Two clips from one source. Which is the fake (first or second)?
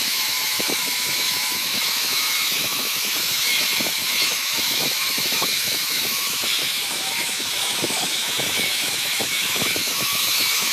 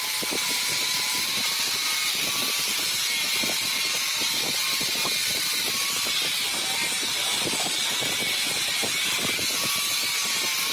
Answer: first